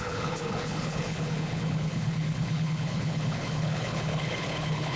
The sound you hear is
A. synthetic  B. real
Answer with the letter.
A